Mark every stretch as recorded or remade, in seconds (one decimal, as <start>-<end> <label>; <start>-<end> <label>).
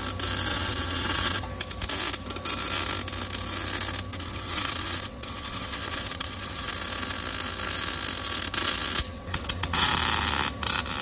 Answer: 0.0-0.5 recorded; 0.5-1.4 remade; 1.4-4.1 recorded; 4.1-6.7 remade; 6.7-9.1 recorded; 9.1-9.9 remade; 9.9-11.0 recorded